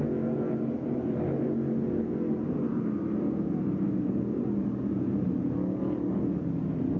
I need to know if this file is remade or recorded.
recorded